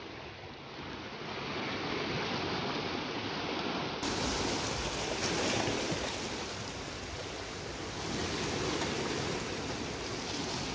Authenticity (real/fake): real